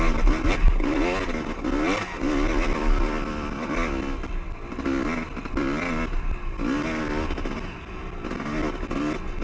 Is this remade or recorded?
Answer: recorded